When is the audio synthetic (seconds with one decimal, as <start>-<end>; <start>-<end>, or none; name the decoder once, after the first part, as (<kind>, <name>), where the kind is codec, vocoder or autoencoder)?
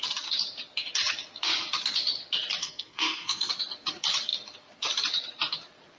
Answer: 2.6-3.5 (codec, SNAC)